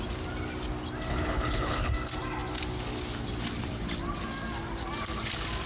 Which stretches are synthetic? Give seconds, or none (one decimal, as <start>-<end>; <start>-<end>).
1.1-1.9